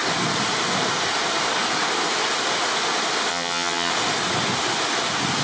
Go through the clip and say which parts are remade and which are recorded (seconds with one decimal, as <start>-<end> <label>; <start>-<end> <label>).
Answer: 0.0-3.3 recorded; 3.3-3.9 remade; 3.9-5.4 recorded